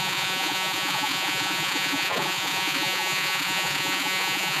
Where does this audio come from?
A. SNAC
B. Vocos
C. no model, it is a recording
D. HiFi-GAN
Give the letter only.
B